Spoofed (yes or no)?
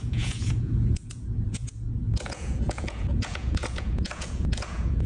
yes